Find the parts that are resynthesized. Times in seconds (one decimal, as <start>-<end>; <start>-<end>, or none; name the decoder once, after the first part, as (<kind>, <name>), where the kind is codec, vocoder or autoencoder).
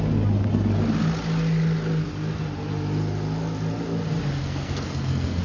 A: 4.4-5.4 (codec, SNAC)